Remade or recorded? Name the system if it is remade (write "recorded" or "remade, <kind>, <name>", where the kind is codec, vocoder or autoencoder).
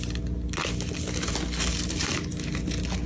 recorded